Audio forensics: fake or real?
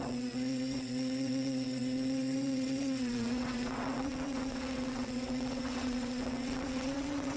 fake